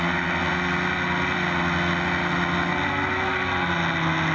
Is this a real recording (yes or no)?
yes